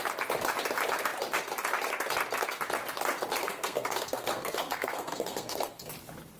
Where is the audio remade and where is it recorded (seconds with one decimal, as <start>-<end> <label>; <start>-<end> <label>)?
0.0-3.4 recorded; 3.4-5.9 remade; 5.9-6.4 recorded